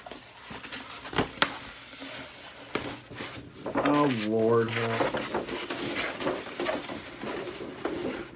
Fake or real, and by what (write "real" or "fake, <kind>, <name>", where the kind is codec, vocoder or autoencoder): real